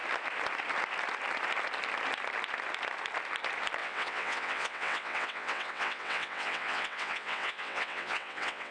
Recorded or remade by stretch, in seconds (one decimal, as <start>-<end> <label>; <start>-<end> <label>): 0.0-3.8 recorded; 3.8-8.7 remade